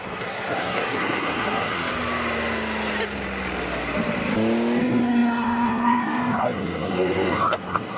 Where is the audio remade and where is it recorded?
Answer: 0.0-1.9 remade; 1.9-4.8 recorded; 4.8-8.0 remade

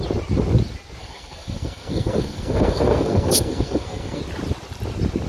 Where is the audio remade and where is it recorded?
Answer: 0.0-1.0 recorded; 1.0-4.2 remade; 4.2-5.3 recorded

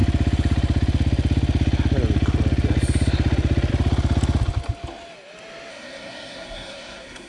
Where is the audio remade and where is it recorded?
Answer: 0.0-5.7 recorded; 5.7-7.3 remade

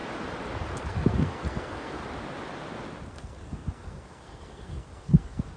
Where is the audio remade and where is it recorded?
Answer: 0.0-0.8 recorded; 0.8-2.0 remade; 2.0-3.1 recorded; 3.1-5.6 remade

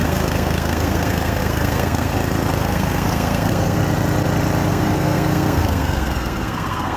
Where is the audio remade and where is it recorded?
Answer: 0.0-2.1 remade; 2.1-2.6 recorded; 2.6-3.8 remade; 3.8-4.7 recorded; 4.7-7.0 remade

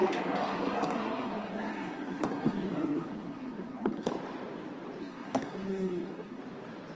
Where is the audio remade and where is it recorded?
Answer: 0.0-4.1 remade; 4.1-5.0 recorded; 5.0-6.4 remade; 6.4-6.9 recorded

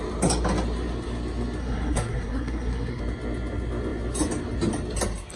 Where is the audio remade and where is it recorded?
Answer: 0.0-1.6 recorded; 1.6-3.0 remade; 3.0-5.4 recorded

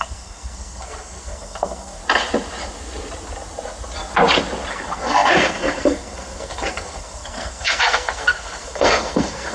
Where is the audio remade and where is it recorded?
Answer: 0.0-2.0 remade; 2.0-4.7 recorded; 4.7-9.5 remade